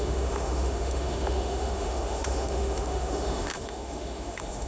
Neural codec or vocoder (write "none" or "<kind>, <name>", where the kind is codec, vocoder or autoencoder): autoencoder, DAC-VAE